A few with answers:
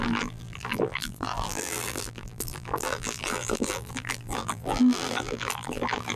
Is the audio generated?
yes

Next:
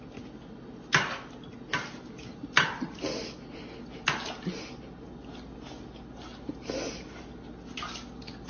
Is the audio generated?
no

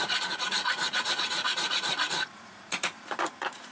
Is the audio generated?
yes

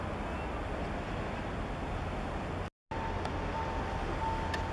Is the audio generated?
no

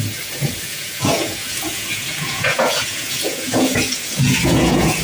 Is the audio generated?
yes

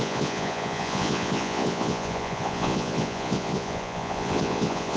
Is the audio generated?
yes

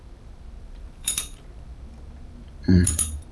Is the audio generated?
yes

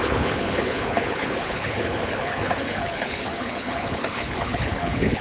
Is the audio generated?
yes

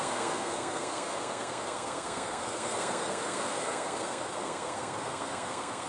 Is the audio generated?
yes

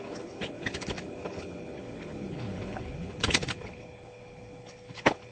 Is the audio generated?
yes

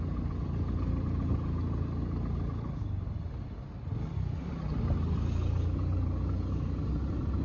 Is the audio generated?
no